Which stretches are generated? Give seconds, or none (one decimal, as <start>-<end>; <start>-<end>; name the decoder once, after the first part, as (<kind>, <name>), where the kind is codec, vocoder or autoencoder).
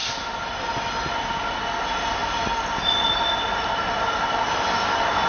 none